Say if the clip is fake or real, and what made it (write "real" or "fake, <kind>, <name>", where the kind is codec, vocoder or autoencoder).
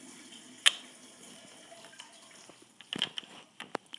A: real